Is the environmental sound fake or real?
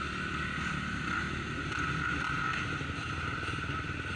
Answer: real